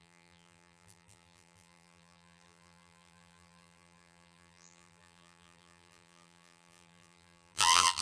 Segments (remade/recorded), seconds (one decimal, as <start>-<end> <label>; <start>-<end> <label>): 0.0-8.0 remade